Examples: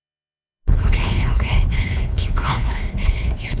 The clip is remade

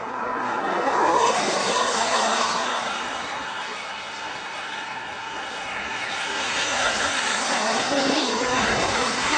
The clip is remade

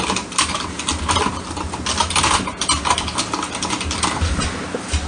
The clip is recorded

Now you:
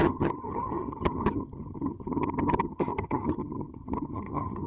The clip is remade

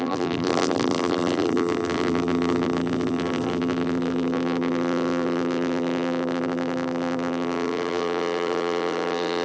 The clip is remade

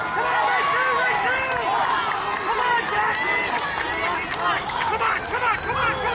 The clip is recorded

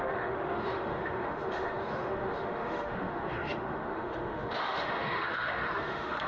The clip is remade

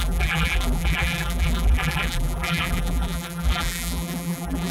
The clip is remade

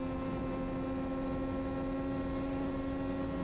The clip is recorded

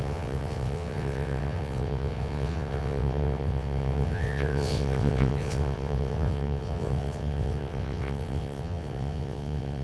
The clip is remade